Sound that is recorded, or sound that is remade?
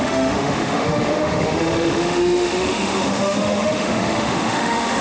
remade